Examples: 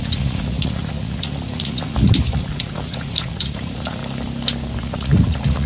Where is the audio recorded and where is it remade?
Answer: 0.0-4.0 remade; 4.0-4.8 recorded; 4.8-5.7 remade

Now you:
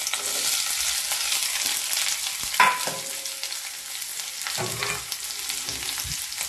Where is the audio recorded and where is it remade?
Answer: 0.0-4.1 recorded; 4.1-4.8 remade; 4.8-6.5 recorded

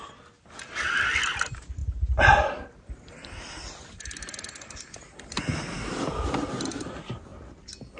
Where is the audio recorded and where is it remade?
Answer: 0.0-8.0 recorded

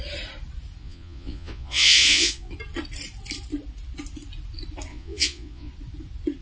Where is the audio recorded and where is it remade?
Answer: 0.0-0.8 recorded; 0.8-2.5 remade; 2.5-4.9 recorded; 4.9-5.7 remade; 5.7-6.4 recorded

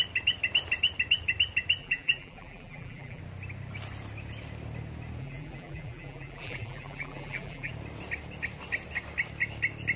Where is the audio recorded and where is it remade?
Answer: 0.0-1.8 recorded; 1.8-3.2 remade; 3.2-5.2 recorded; 5.2-7.7 remade; 7.7-10.0 recorded